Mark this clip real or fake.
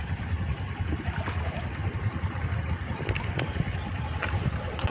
real